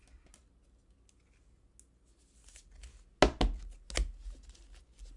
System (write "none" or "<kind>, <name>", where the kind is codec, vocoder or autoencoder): none